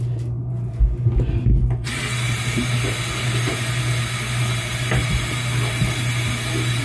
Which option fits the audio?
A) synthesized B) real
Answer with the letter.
B